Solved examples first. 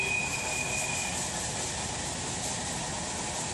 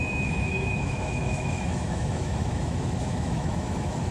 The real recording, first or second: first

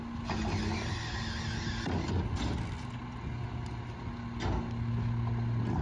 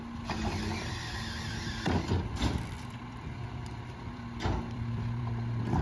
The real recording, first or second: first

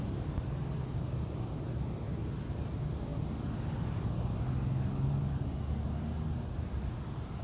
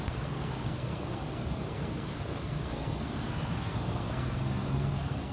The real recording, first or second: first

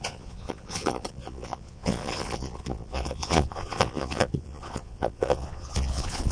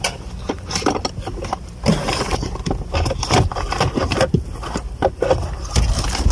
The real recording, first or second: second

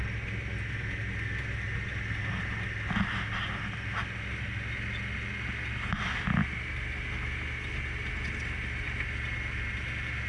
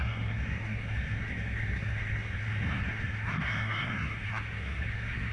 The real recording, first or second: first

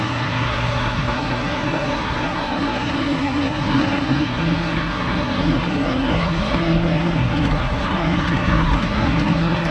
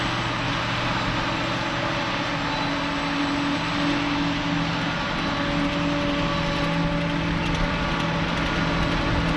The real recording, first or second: second